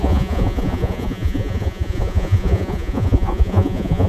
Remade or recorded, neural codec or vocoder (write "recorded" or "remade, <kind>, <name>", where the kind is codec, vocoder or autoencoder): remade, vocoder, Vocos